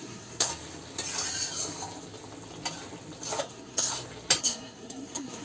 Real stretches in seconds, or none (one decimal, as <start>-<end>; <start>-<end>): 0.5-3.4; 3.9-4.4